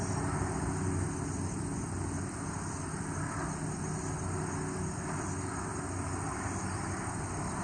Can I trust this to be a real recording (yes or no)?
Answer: yes